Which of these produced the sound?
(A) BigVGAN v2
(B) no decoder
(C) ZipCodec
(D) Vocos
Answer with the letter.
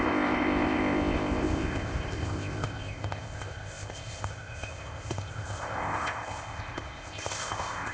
C